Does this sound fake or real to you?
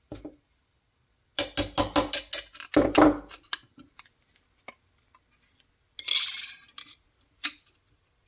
real